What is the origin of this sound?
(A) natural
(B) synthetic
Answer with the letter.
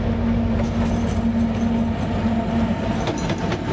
A